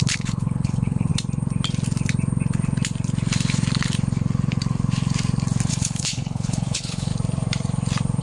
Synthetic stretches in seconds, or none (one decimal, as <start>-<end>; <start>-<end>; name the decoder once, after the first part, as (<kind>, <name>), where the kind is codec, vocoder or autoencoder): 0.0-1.1 (codec, HILCodec); 5.7-7.1